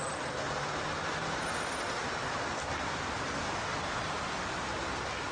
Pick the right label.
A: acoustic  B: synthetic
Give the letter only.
A